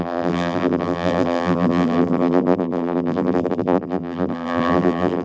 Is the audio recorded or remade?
remade